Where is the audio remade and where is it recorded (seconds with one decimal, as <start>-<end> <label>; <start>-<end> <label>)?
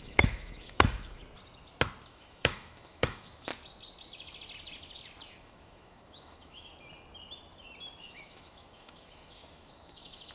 0.0-1.2 remade; 1.2-2.1 recorded; 2.1-3.5 remade; 3.5-5.4 recorded; 5.4-6.7 remade; 6.7-8.0 recorded; 8.0-10.3 remade